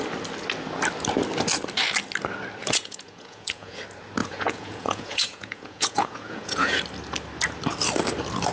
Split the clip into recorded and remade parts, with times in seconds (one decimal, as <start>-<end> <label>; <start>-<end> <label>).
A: 0.0-2.6 recorded; 2.6-3.8 remade; 3.8-4.2 recorded; 4.2-6.8 remade; 6.8-8.5 recorded